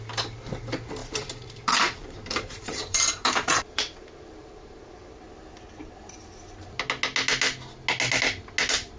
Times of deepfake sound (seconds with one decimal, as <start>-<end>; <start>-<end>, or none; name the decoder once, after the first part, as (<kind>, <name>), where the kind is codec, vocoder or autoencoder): 1.0-5.2 (vocoder, BigVGAN v2)